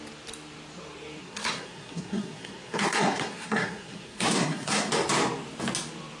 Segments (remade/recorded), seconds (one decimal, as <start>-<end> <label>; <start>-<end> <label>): 0.0-1.2 recorded; 1.2-4.9 remade; 4.9-6.2 recorded